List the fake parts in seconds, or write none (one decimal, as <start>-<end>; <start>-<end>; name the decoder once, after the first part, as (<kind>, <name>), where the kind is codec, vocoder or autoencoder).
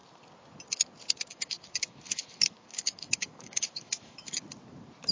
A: 1.3-4.4 (autoencoder, DAC-VAE)